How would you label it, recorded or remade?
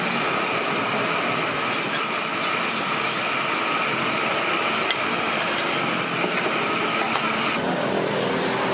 recorded